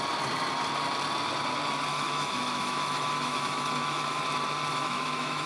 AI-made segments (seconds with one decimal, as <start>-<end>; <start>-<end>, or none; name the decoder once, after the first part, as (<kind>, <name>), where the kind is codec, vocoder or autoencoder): 1.9-4.2 (autoencoder, DAC-VAE); 4.7-5.5